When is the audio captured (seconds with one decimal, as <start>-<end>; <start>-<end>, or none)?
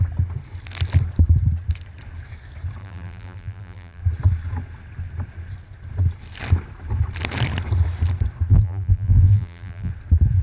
0.0-2.8; 4.0-8.5; 9.9-10.4